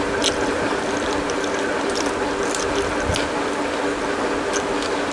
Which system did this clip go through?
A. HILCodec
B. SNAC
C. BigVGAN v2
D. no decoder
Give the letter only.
D